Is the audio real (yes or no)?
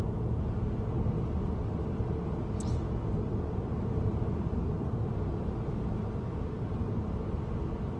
yes